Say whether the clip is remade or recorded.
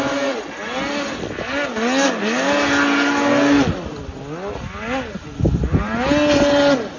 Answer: recorded